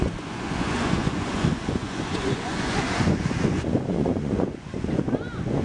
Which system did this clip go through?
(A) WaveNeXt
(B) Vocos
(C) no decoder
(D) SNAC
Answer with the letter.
B